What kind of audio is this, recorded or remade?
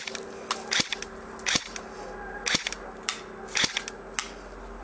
recorded